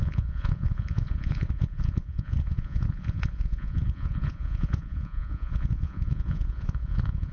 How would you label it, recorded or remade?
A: remade